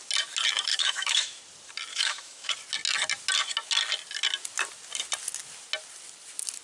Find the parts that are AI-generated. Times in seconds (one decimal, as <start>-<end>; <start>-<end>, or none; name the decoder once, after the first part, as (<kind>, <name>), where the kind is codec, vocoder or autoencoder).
0.7-1.4 (autoencoder, DAC-VAE); 1.9-2.5